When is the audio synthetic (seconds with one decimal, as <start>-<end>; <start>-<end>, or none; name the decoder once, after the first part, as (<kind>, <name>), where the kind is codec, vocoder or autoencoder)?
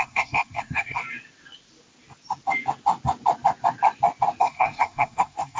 0.0-1.0 (codec, SNAC); 4.4-5.6